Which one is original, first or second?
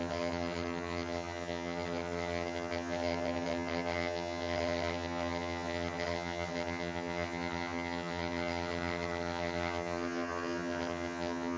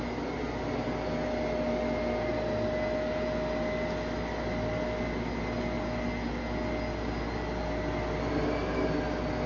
second